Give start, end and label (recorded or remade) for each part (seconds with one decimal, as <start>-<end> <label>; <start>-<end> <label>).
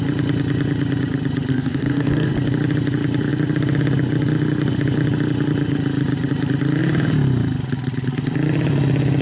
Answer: 0.0-1.5 recorded; 1.5-2.3 remade; 2.3-9.2 recorded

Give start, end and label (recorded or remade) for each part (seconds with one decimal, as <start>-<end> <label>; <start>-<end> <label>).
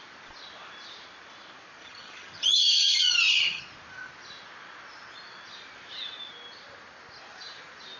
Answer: 0.0-1.8 recorded; 1.8-3.6 remade; 3.6-8.0 recorded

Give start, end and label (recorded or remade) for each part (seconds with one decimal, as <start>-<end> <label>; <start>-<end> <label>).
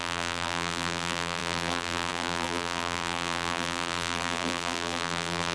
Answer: 0.0-5.5 remade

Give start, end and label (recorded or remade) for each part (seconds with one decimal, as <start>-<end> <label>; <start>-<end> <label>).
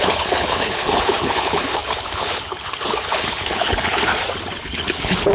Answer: 0.0-4.1 remade; 4.1-4.6 recorded; 4.6-5.3 remade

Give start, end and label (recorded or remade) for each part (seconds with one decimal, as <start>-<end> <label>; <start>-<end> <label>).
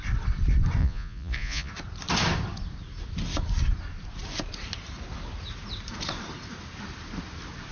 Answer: 0.0-0.8 recorded; 0.8-1.7 remade; 1.7-7.7 recorded